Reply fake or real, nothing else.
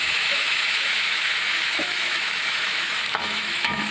fake